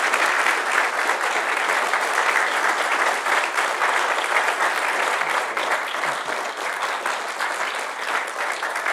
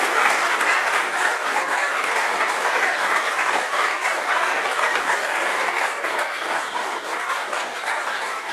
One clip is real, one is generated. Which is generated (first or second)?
second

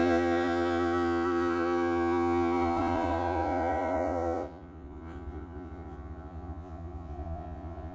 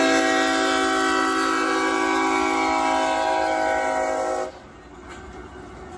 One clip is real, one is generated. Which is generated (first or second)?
first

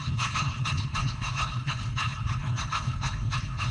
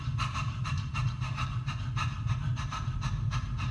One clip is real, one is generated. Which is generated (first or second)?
first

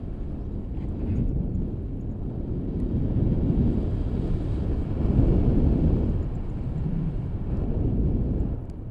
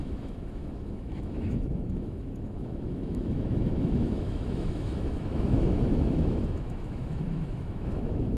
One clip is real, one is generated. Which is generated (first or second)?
second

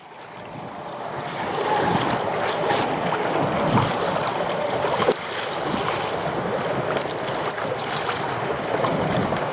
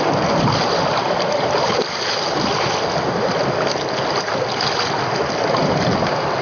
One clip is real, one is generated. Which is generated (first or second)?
first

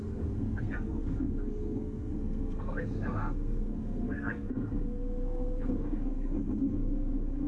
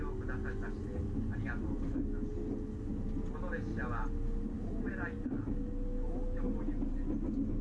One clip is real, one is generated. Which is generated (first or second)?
first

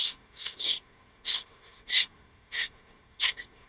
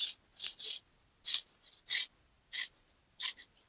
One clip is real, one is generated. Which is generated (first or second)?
first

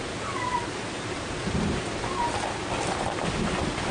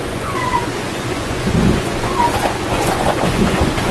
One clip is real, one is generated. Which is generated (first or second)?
second